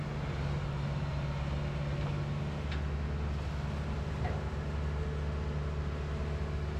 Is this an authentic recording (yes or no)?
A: yes